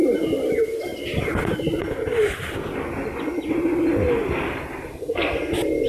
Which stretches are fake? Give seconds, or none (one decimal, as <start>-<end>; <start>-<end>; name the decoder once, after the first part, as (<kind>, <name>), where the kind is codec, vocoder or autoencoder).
4.9-5.5 (codec, SNAC)